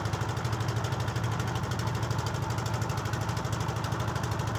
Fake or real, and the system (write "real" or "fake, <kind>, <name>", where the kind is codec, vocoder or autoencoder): real